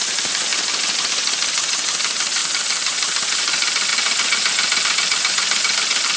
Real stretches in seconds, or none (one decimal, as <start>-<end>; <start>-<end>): 0.0-6.2